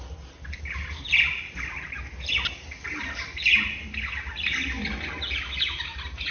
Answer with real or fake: real